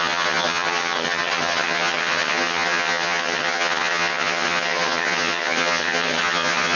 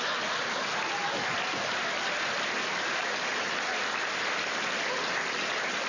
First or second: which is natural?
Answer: second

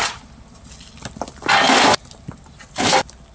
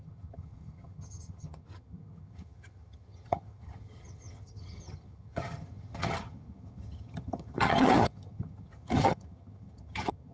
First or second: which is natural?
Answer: first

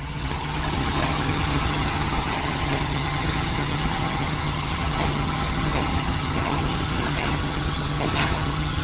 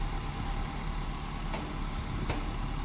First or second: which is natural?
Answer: second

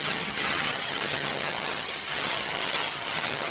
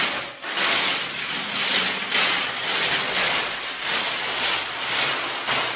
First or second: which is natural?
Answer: second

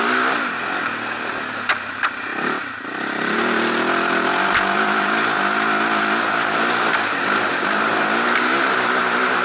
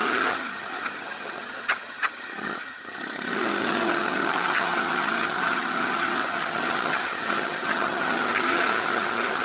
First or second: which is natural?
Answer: first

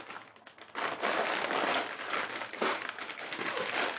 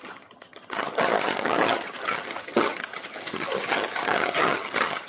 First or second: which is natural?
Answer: first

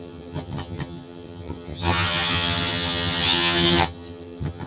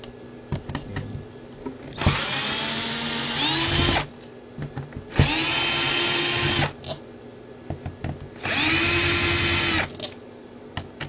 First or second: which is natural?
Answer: second